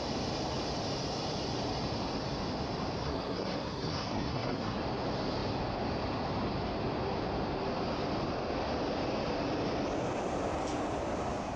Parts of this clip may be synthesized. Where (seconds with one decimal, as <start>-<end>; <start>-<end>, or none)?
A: 3.0-4.8